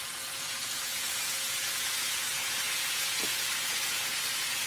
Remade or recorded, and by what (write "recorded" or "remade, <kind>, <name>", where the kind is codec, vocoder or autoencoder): remade, vocoder, Vocos